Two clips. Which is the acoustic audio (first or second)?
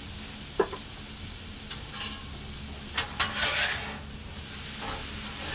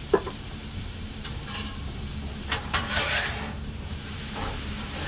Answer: first